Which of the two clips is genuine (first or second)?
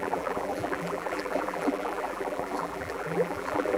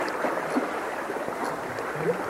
second